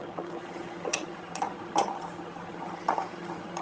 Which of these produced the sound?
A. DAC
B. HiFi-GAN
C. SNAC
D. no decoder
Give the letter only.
B